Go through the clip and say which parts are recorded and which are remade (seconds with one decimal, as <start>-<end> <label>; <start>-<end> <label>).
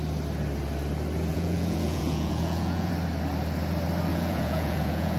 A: 0.0-1.3 recorded; 1.3-2.9 remade; 2.9-4.1 recorded; 4.1-5.2 remade